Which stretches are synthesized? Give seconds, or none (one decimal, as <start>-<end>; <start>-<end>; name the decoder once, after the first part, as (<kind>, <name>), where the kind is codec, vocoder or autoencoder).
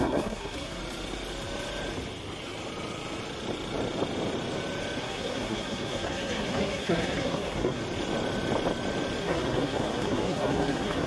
0.0-0.8 (codec, SNAC); 5.0-7.8; 9.2-11.1